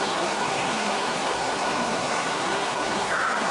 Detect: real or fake fake